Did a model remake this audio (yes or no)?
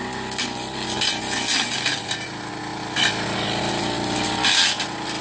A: no